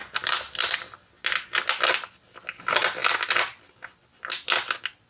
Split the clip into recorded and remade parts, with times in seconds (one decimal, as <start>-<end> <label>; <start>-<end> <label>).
0.0-5.1 recorded